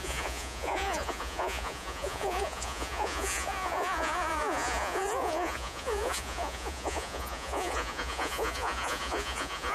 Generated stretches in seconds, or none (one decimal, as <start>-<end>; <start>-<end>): 0.0-9.7